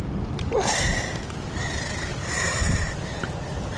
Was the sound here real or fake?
real